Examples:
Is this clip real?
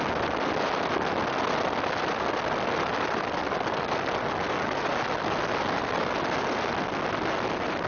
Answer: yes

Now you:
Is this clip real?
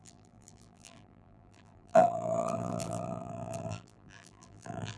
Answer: no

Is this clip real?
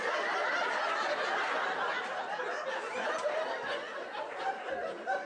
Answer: yes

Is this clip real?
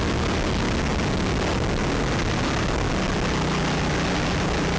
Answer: yes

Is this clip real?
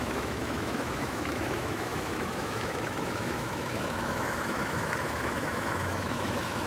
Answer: no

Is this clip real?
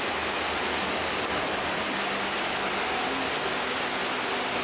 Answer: yes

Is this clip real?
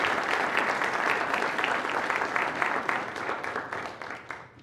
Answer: no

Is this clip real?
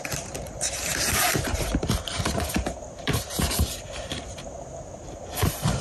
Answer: no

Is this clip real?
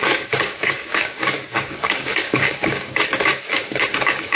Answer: no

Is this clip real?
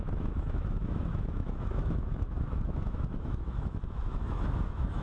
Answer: no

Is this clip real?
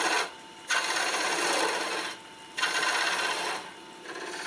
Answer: yes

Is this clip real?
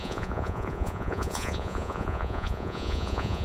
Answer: no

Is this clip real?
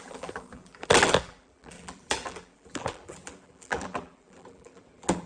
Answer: no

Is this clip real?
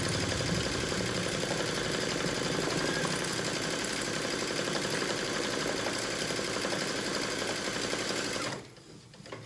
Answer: yes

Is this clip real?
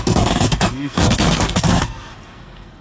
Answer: no